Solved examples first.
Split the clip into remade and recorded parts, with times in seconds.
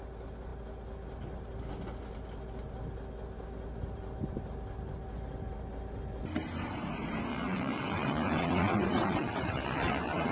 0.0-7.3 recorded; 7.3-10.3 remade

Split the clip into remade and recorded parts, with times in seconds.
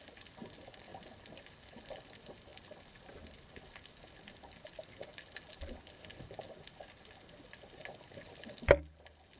0.0-9.4 recorded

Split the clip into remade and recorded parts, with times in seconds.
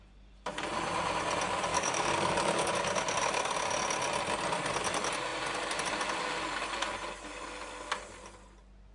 0.0-1.7 recorded; 1.7-2.7 remade; 2.7-8.9 recorded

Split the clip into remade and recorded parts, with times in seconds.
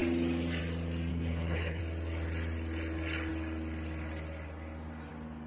0.0-1.1 recorded; 1.1-1.8 remade; 1.8-5.5 recorded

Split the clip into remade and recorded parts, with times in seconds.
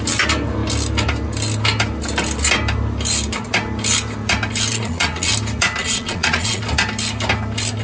0.0-4.7 recorded; 4.7-5.3 remade; 5.3-5.8 recorded; 5.8-6.6 remade; 6.6-7.8 recorded